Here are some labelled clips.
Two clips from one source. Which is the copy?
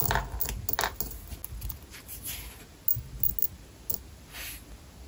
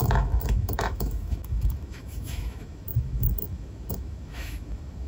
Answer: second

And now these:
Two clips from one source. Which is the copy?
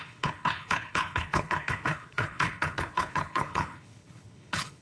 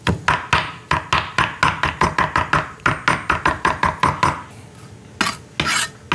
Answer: first